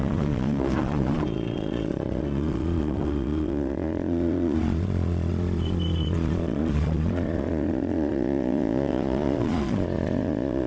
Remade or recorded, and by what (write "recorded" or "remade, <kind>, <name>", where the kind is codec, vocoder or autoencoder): remade, vocoder, Vocos